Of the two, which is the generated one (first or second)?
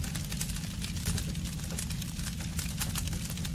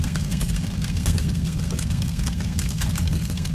second